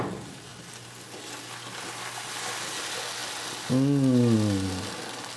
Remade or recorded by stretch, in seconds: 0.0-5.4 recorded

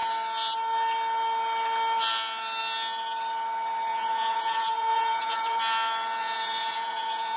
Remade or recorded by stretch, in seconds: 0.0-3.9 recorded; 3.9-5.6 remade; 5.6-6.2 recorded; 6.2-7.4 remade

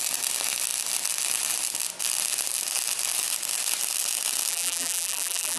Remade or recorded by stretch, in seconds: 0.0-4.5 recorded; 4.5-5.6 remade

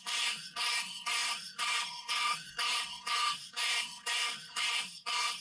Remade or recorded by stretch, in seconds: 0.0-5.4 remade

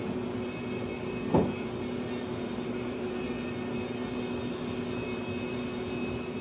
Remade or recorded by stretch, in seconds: 0.0-6.4 recorded

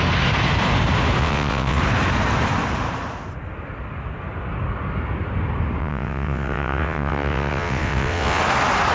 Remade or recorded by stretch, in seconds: 0.0-1.2 recorded; 1.2-1.8 remade; 1.8-5.8 recorded; 5.8-8.4 remade; 8.4-8.9 recorded